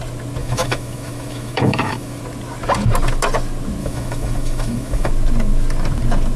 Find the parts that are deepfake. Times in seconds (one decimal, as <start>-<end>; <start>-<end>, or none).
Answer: 0.4-2.2; 3.8-5.1